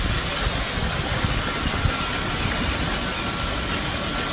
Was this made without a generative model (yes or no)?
yes